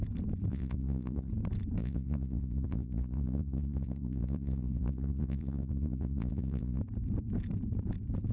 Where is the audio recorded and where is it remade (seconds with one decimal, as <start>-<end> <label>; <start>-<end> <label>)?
0.0-0.5 recorded; 0.5-1.3 remade; 1.3-1.8 recorded; 1.8-6.8 remade; 6.8-8.3 recorded